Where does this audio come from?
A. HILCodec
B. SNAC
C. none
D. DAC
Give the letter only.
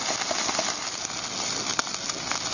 C